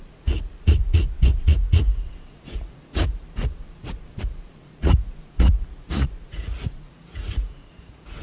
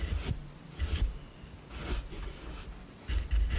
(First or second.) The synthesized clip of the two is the first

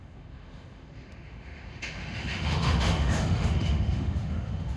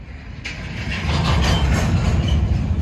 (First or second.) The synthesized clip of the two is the first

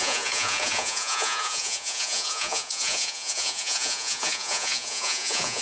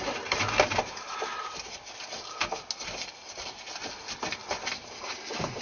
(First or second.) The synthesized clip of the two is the first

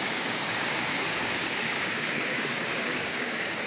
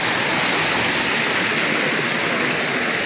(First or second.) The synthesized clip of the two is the first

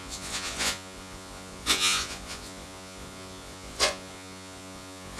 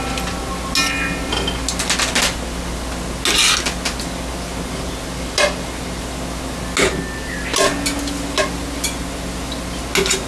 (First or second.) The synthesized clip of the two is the first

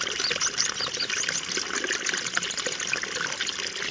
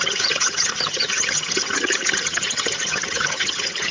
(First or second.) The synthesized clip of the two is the second